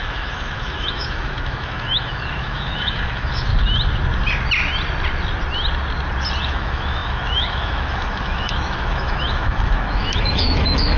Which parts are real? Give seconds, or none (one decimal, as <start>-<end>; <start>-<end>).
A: 3.5-6.4